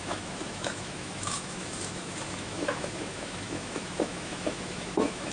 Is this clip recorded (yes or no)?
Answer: no